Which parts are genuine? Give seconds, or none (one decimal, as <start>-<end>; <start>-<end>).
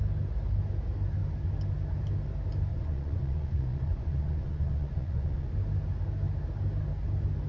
0.0-2.7; 5.5-7.5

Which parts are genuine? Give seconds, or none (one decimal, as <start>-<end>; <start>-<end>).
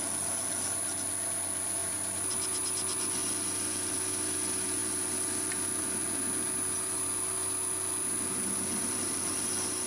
0.0-1.8; 2.3-9.9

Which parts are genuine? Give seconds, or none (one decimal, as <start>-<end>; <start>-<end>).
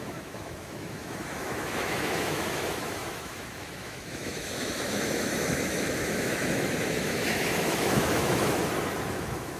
8.6-9.1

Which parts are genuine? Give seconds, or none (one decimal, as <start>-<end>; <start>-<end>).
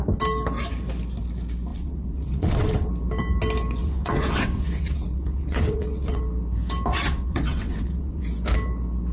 0.0-1.7; 2.9-3.8; 6.2-6.9; 8.2-9.1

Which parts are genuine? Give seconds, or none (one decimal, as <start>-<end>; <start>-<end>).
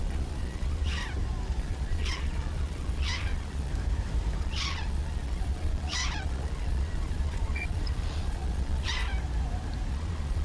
1.0-1.6; 3.7-4.4; 9.0-9.9